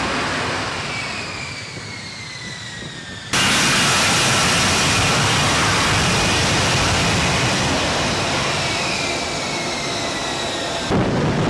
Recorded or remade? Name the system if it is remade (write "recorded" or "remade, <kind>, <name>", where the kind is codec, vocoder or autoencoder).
recorded